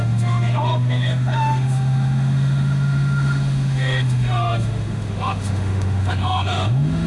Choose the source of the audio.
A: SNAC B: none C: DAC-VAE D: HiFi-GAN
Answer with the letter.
C